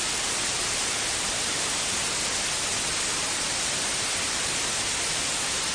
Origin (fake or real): real